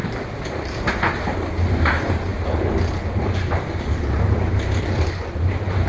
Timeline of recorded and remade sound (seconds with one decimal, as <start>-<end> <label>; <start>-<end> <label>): 0.0-5.9 remade